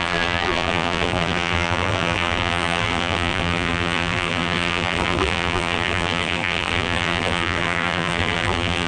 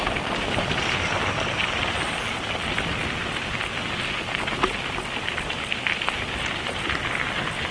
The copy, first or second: first